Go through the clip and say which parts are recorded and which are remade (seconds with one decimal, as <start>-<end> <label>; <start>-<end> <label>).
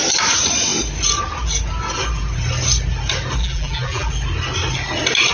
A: 0.0-3.4 recorded; 3.4-4.1 remade; 4.1-5.3 recorded